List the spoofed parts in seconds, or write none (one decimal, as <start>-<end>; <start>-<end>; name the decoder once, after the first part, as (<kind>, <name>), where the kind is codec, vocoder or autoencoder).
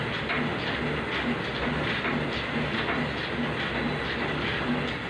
none